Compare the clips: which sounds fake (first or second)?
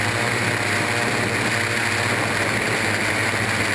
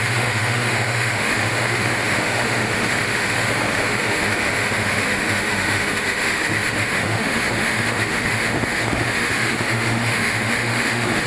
second